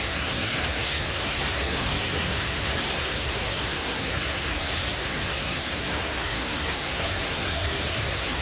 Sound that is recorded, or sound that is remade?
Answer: remade